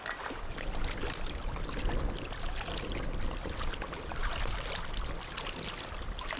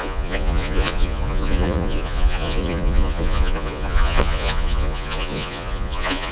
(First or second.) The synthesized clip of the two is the second